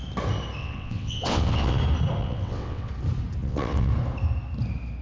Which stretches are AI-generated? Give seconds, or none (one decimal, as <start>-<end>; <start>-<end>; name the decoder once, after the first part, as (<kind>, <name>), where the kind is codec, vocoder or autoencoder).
0.6-1.8 (vocoder, WaveNeXt); 2.2-2.9; 3.4-3.9